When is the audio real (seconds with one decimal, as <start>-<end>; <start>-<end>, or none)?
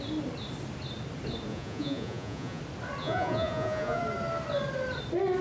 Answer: 0.0-1.5; 2.6-3.0; 4.0-5.4